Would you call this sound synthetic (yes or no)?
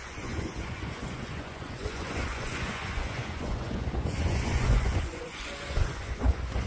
yes